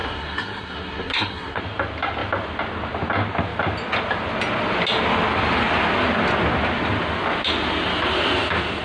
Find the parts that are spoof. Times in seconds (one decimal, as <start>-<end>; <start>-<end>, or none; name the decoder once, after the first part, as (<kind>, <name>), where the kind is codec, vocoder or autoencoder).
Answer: 0.0-1.6 (codec, SNAC)